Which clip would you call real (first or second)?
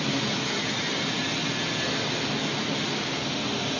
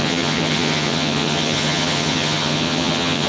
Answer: first